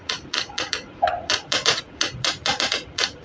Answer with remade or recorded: remade